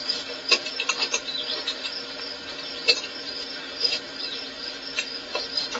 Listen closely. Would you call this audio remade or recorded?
remade